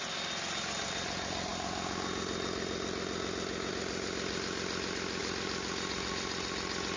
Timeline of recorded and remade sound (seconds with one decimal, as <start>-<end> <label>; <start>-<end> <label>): 0.0-7.0 recorded